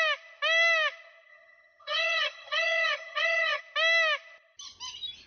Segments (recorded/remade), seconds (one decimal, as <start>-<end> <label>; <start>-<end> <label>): 0.0-1.3 recorded; 1.3-3.6 remade; 3.6-5.3 recorded